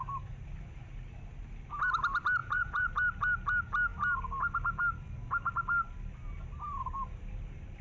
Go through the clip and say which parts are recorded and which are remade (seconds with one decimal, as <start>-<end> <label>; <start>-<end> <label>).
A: 0.0-2.4 recorded; 2.4-2.9 remade; 2.9-7.8 recorded

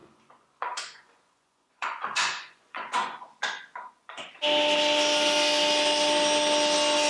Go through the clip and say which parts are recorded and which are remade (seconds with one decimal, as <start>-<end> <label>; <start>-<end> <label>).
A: 0.0-4.3 remade; 4.3-7.1 recorded

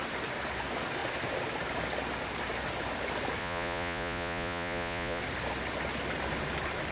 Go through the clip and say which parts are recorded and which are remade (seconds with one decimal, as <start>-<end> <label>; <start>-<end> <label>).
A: 0.0-3.4 recorded; 3.4-5.2 remade; 5.2-6.9 recorded

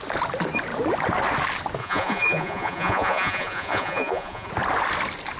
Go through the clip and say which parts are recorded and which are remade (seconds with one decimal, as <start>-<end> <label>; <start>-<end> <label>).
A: 0.0-1.8 recorded; 1.8-4.5 remade; 4.5-5.4 recorded

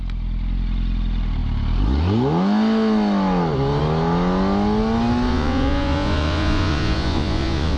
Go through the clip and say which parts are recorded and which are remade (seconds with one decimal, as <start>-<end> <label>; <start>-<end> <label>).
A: 0.0-5.3 recorded; 5.3-7.8 remade

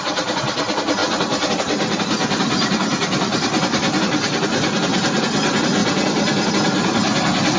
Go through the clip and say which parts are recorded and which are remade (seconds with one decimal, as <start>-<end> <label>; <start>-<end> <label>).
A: 0.0-7.6 recorded